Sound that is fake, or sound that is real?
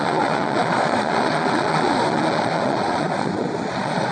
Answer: fake